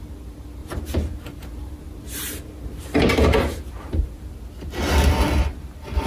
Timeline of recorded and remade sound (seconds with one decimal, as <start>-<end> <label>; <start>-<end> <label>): 0.0-0.6 recorded; 0.6-4.3 remade; 4.3-6.1 recorded